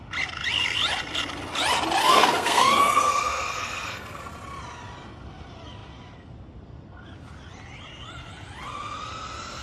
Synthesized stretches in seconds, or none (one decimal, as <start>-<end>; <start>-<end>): 2.0-4.2